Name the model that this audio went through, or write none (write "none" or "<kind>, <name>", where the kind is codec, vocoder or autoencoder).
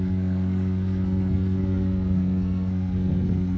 codec, SNAC